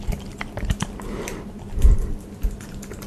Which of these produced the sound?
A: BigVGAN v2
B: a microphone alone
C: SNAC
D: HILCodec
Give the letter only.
A